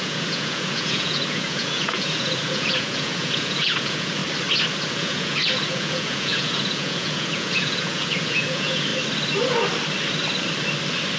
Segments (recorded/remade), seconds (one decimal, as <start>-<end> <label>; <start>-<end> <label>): 0.0-4.2 remade; 4.2-4.9 recorded; 4.9-8.9 remade; 8.9-11.2 recorded